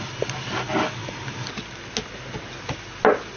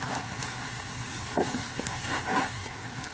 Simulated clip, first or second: second